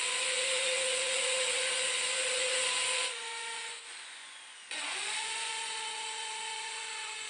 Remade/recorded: remade